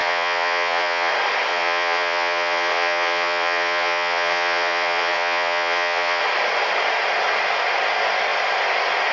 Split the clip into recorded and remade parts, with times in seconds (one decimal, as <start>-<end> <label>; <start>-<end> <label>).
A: 0.0-1.1 remade; 1.1-1.5 recorded; 1.5-6.2 remade; 6.2-9.1 recorded